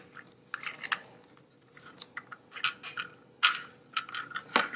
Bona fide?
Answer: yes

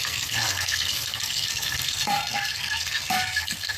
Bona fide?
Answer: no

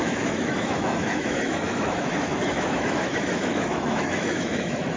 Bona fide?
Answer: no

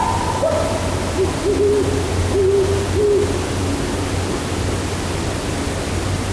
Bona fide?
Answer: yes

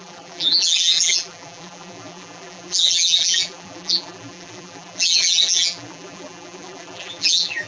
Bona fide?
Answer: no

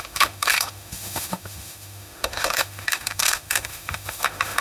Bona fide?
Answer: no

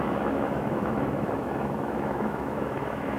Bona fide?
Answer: no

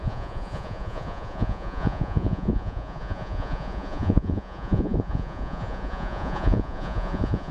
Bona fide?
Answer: no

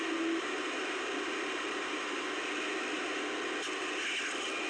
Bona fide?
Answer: yes